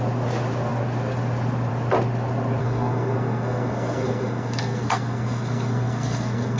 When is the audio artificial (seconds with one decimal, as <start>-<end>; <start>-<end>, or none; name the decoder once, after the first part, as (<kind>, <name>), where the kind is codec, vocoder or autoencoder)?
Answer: 2.6-6.6 (codec, SNAC)